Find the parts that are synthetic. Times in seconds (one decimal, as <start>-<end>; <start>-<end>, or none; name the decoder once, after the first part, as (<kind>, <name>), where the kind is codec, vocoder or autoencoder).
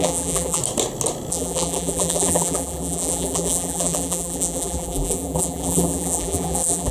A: 0.0-0.6 (vocoder, BigVGAN v2); 1.3-6.9